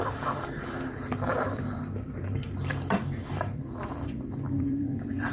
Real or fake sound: fake